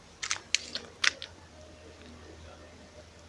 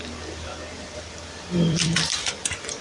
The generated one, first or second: second